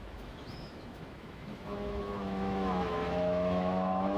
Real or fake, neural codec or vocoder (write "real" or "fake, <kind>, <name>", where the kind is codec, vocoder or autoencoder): fake, autoencoder, DAC-VAE